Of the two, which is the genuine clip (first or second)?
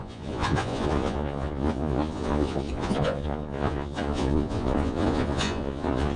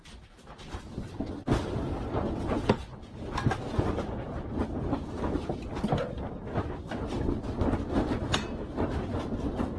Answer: second